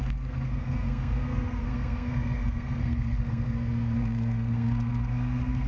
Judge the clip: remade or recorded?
remade